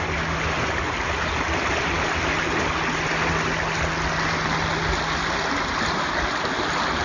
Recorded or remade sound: recorded